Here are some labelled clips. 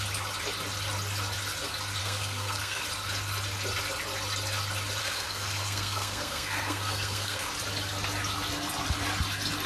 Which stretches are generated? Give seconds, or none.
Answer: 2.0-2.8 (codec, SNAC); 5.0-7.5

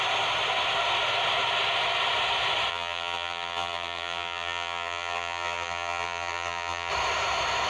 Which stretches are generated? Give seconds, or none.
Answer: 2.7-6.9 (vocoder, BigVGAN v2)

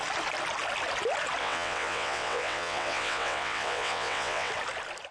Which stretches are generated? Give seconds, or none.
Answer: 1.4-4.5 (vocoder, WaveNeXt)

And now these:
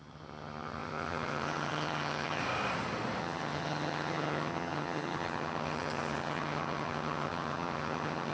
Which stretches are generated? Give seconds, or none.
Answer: 0.0-2.4 (vocoder, HiFi-GAN); 3.2-8.3